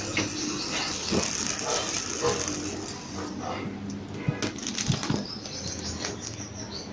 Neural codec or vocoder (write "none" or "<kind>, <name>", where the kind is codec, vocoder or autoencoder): none